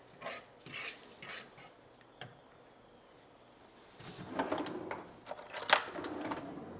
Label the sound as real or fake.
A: real